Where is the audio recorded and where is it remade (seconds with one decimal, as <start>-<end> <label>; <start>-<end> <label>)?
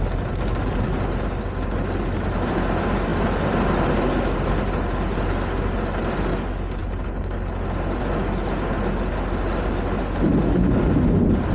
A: 0.0-11.5 recorded